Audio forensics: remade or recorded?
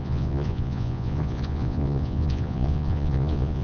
remade